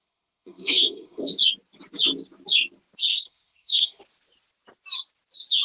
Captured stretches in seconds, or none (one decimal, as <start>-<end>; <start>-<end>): 1.3-3.1; 4.0-5.6

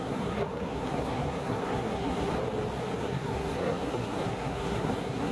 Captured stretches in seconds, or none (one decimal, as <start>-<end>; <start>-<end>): 2.3-3.0

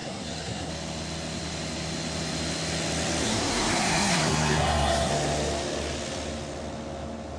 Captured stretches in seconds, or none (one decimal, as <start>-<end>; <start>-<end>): 0.7-3.2; 5.1-7.4

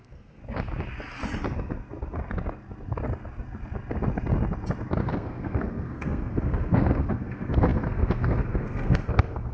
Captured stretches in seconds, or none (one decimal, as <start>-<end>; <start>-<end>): 0.4-4.9